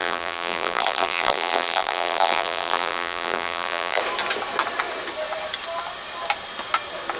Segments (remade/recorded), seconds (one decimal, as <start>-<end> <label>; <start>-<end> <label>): 0.0-4.0 remade; 4.0-7.2 recorded